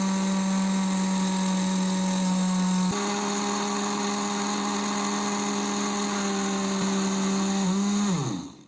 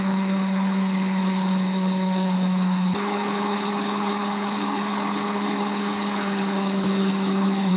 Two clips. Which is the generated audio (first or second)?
second